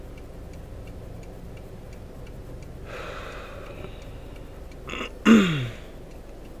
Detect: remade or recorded recorded